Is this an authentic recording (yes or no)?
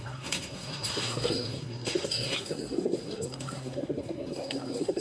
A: no